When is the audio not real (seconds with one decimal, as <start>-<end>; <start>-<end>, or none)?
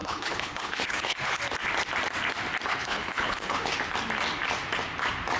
0.0-1.4; 2.7-3.7